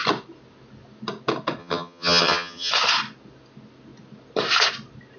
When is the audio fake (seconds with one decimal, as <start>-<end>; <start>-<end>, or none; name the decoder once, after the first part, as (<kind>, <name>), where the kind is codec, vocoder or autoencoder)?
1.6-2.7 (vocoder, HiFi-GAN)